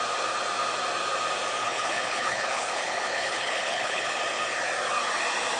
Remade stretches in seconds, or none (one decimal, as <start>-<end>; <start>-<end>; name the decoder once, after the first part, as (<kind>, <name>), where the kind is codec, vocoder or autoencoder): 1.6-4.2 (codec, HILCodec)